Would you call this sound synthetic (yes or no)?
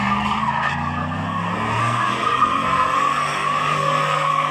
yes